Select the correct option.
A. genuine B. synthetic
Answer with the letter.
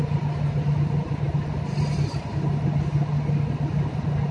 A